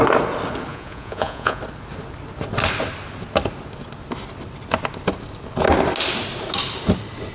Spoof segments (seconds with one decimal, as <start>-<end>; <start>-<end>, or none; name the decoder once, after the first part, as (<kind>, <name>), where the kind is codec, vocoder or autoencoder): 0.7-1.6 (vocoder, Vocos)